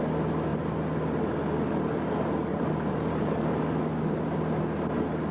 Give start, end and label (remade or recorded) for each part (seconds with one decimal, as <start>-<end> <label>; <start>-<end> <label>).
0.0-2.5 recorded; 2.5-3.6 remade; 3.6-5.3 recorded